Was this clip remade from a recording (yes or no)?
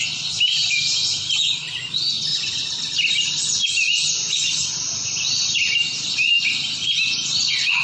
no